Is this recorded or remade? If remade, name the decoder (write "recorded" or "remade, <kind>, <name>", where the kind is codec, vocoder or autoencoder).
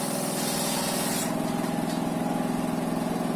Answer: recorded